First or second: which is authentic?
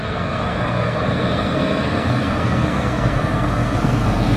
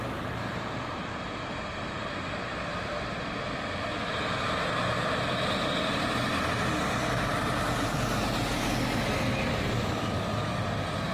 second